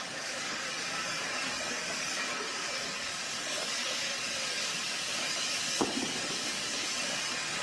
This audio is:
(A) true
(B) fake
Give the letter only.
B